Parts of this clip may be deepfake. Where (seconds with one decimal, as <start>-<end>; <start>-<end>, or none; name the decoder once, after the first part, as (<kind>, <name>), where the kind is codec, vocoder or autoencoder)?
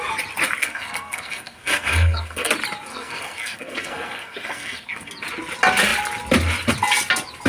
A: 0.6-2.5 (codec, SNAC); 2.9-5.1